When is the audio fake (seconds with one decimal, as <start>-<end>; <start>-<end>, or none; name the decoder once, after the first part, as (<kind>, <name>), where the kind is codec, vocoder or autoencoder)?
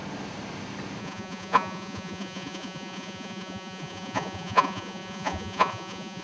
1.0-6.2 (vocoder, Vocos)